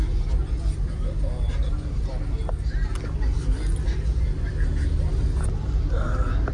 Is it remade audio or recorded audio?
recorded